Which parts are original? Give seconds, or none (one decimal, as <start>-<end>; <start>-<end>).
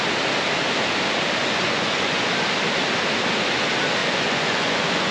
0.0-1.4; 2.2-4.0